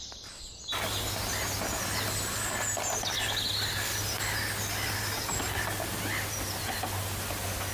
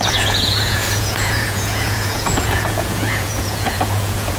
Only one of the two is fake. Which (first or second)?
second